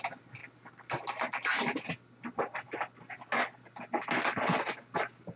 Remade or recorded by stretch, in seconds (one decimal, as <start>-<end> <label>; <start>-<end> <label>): 0.0-5.4 recorded